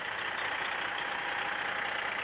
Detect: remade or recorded recorded